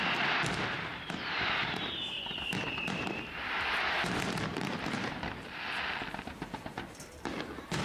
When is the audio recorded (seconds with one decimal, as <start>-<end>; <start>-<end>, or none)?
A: 0.0-0.9; 2.3-2.8; 5.6-7.8